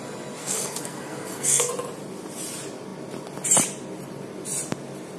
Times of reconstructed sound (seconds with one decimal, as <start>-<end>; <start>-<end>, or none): 0.4-1.7